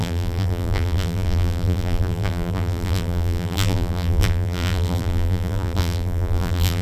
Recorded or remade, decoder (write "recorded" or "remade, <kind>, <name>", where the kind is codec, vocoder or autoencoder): remade, vocoder, BigVGAN v2